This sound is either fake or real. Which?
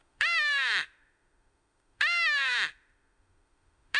fake